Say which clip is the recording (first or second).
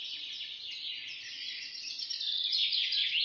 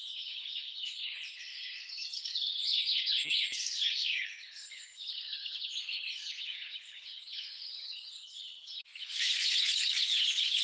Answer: first